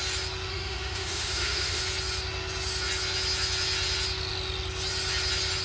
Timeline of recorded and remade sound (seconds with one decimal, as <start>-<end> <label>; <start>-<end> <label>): 0.0-0.5 recorded; 0.5-1.8 remade; 1.8-5.6 recorded